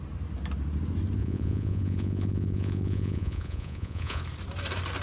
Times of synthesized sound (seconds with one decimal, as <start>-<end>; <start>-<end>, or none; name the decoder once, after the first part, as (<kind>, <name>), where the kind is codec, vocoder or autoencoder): 1.2-4.2 (vocoder, Vocos)

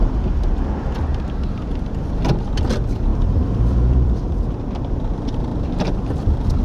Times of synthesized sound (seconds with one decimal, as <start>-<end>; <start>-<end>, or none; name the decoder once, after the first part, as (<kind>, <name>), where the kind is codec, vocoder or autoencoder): 3.1-4.4 (vocoder, BigVGAN v2); 5.5-6.6